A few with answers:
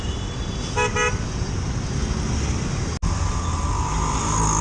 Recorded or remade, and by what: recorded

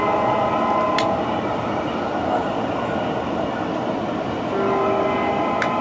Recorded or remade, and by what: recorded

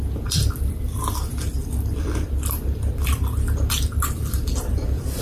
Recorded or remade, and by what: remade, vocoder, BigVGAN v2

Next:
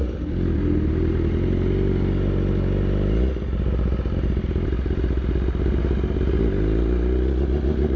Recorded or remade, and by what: recorded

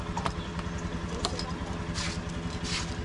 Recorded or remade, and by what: recorded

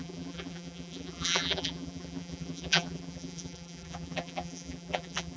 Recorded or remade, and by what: remade, vocoder, BigVGAN v2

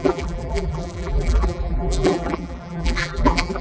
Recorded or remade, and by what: remade, vocoder, BigVGAN v2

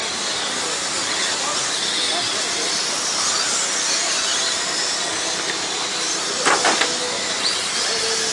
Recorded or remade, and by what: recorded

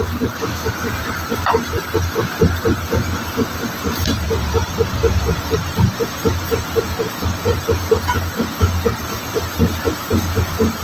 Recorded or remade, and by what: recorded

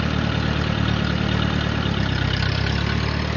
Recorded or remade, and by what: remade, vocoder, BigVGAN v2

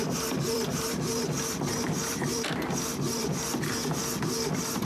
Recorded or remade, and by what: remade, vocoder, BigVGAN v2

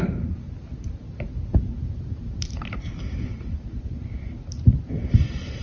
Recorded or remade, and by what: remade, vocoder, BigVGAN v2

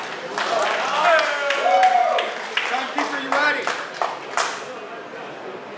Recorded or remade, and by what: recorded